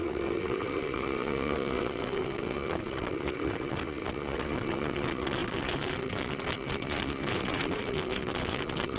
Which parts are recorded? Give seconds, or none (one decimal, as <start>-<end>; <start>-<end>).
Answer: none